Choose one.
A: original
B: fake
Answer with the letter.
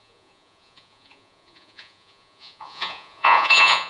B